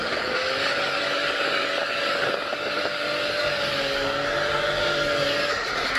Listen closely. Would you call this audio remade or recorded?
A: remade